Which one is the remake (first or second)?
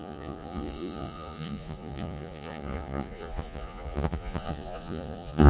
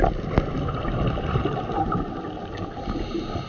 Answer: first